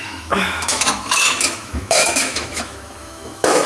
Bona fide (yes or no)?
no